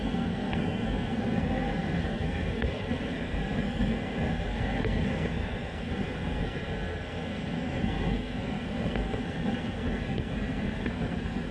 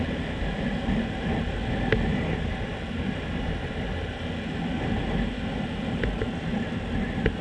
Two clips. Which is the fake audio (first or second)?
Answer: first